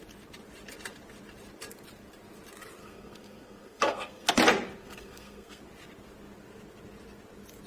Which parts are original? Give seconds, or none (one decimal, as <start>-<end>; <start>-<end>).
0.0-2.8; 4.3-4.8; 5.6-7.7